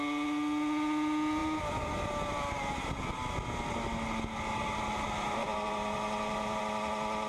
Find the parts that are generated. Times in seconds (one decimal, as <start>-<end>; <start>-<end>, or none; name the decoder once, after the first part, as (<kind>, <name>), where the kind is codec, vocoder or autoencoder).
1.4-3.0 (vocoder, BigVGAN v2); 5.4-6.6